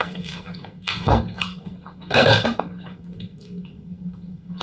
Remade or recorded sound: remade